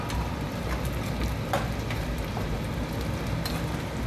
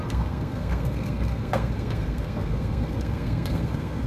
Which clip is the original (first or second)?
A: first